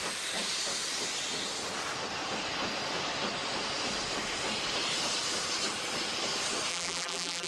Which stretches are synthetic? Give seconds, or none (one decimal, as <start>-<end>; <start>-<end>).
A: 6.7-7.5